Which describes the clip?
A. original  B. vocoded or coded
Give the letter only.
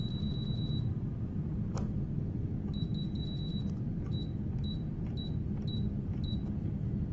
A